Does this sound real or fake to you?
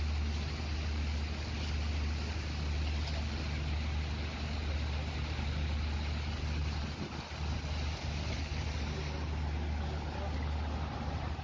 real